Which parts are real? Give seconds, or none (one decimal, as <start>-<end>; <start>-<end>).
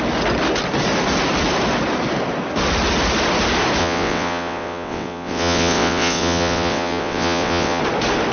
0.0-3.8; 7.8-8.3